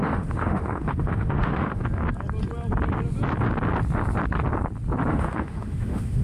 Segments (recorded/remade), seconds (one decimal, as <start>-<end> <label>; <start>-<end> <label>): 0.0-1.8 remade; 1.8-5.1 recorded; 5.1-6.2 remade